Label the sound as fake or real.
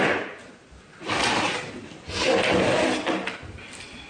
real